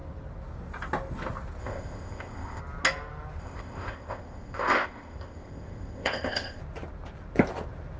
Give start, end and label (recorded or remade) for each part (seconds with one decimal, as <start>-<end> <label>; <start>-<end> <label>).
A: 0.0-1.6 recorded; 1.6-2.6 remade; 2.6-3.4 recorded; 3.4-6.6 remade; 6.6-8.0 recorded